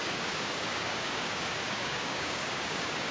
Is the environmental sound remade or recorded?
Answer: remade